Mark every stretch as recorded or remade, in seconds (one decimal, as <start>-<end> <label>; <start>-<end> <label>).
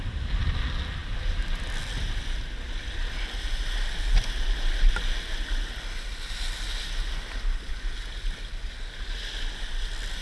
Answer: 0.0-10.2 recorded